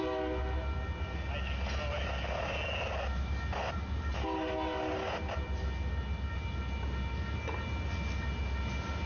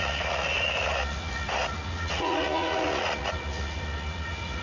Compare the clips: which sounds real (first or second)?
first